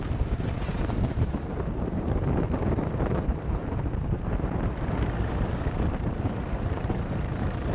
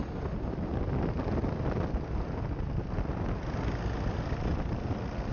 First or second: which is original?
second